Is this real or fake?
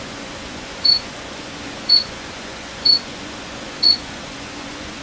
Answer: fake